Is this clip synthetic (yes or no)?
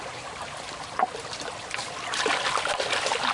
yes